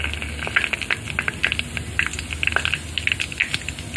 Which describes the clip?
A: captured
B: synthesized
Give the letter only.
A